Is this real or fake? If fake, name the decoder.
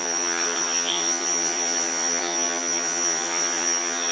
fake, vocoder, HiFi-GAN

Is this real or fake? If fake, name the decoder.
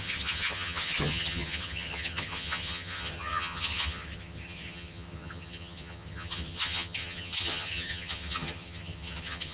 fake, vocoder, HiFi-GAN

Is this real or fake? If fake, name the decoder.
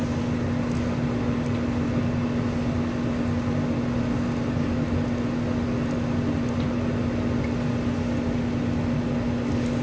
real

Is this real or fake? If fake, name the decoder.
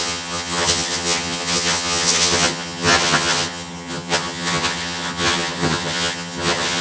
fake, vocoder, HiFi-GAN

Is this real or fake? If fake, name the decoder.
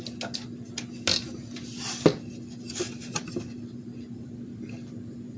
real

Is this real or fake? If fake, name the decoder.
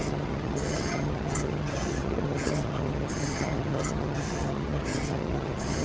fake, vocoder, HiFi-GAN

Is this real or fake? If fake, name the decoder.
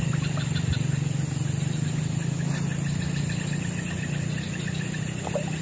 real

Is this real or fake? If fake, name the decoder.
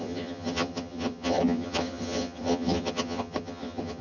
fake, vocoder, HiFi-GAN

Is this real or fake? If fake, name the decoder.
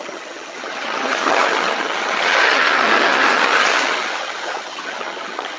fake, vocoder, HiFi-GAN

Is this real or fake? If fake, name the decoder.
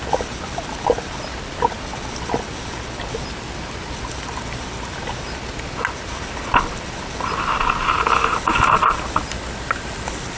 real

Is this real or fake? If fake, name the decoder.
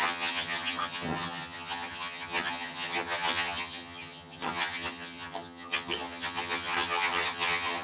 fake, vocoder, HiFi-GAN